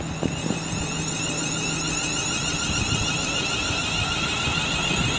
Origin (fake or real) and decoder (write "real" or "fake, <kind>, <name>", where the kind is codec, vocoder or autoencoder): real